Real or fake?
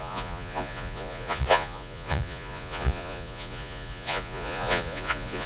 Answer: fake